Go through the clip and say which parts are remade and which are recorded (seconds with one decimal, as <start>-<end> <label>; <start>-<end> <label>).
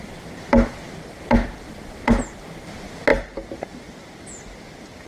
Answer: 0.0-5.1 recorded